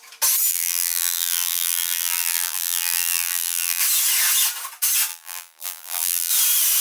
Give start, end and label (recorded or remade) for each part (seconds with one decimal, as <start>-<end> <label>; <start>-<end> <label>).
0.0-0.5 recorded; 0.5-3.8 remade; 3.8-5.1 recorded; 5.1-6.3 remade; 6.3-6.8 recorded